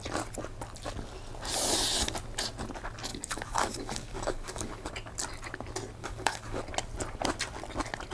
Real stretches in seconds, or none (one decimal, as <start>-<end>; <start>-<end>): 0.0-3.1; 4.9-6.0; 6.6-8.1